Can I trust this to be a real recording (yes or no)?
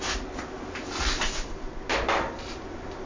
yes